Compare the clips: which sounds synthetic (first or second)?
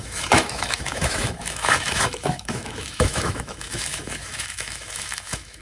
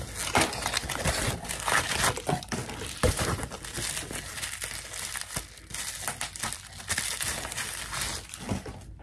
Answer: first